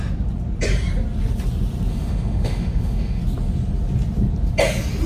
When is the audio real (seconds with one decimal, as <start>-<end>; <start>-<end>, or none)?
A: 0.0-1.9; 3.2-5.1